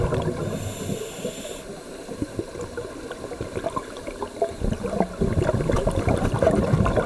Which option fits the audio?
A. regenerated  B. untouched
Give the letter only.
B